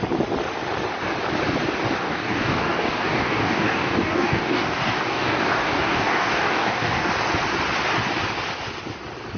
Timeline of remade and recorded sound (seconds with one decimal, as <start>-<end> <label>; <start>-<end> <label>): 0.0-2.0 recorded; 2.0-7.1 remade; 7.1-9.4 recorded